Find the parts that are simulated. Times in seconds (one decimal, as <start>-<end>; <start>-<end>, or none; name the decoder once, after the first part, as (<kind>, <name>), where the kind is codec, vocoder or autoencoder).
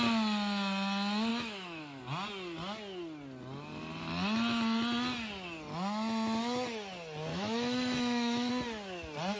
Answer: 1.3-2.0 (autoencoder, DAC-VAE); 7.3-8.5